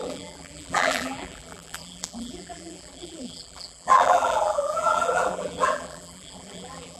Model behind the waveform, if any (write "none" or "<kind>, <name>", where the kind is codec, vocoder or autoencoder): vocoder, BigVGAN v2